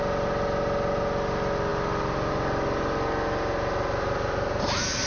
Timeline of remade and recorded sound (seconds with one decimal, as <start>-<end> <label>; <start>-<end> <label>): 0.0-5.1 recorded